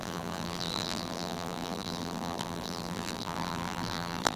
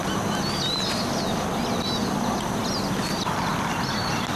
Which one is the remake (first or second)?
first